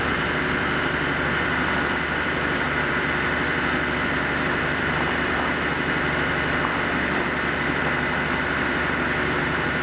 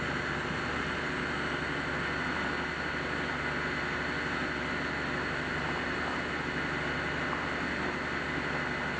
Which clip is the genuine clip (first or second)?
second